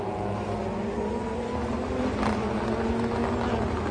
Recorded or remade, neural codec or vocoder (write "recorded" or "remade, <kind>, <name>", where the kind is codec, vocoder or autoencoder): recorded